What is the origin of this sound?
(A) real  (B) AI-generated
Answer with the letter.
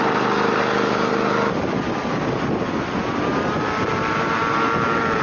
A